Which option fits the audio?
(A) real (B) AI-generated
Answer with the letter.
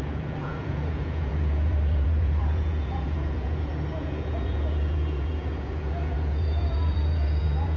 B